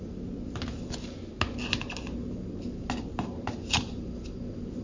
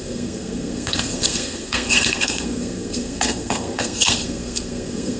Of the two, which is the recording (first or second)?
first